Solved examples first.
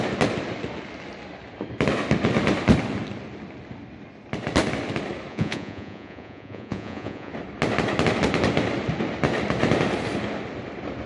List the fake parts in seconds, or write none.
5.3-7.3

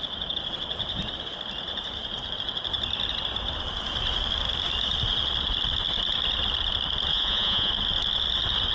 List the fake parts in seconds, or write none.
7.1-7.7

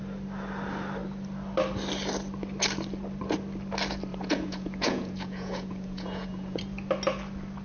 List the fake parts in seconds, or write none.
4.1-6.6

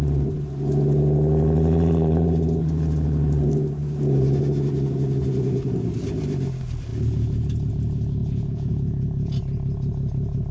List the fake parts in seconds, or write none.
8.2-9.3

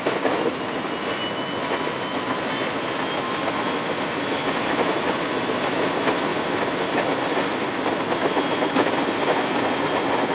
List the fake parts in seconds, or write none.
none